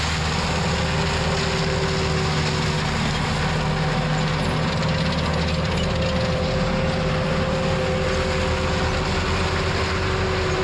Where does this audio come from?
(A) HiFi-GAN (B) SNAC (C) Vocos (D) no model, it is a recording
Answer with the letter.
D